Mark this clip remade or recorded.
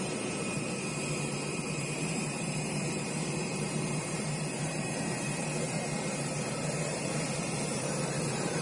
remade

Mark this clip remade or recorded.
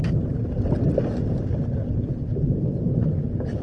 recorded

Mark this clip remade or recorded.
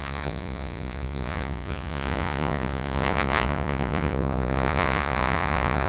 remade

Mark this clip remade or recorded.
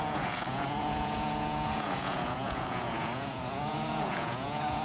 remade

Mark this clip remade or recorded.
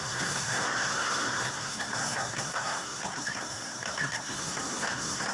remade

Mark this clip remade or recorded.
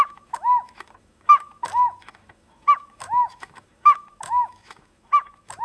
remade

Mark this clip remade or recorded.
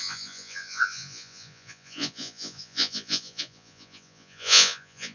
remade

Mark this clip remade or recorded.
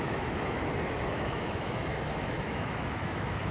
remade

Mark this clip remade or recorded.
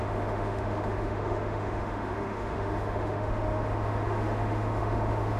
remade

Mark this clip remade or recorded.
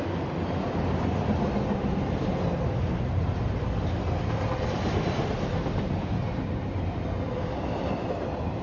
recorded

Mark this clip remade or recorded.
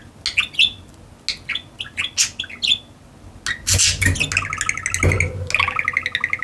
recorded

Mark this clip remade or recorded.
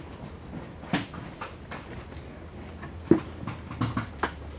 recorded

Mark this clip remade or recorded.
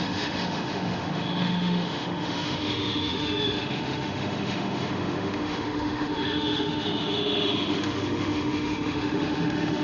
remade